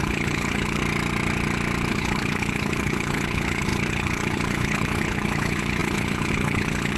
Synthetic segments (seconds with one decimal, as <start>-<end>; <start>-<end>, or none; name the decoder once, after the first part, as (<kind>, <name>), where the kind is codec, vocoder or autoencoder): 0.0-0.8 (codec, HILCodec); 1.9-7.0